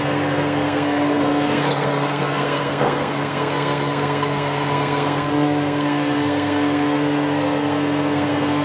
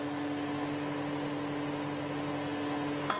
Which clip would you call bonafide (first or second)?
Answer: second